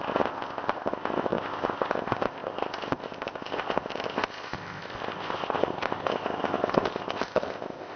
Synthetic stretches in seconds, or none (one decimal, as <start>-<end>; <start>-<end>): 0.0-8.0